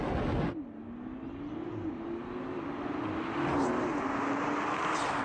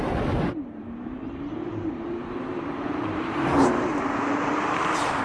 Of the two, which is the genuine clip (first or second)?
first